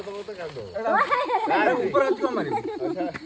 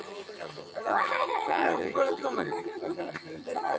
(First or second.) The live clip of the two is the first